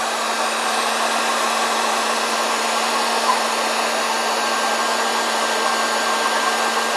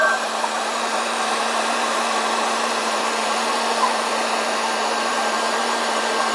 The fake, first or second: second